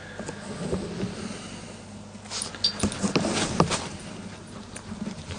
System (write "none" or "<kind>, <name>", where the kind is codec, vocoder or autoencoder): none